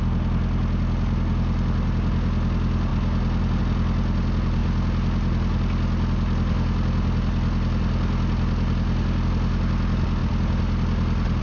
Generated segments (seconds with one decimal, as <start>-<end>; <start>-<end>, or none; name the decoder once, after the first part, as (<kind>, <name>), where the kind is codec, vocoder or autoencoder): none